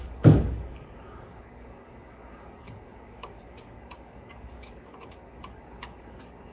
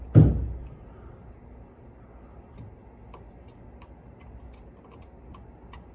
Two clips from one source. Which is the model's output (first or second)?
first